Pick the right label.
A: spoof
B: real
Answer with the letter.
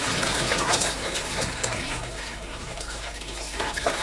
A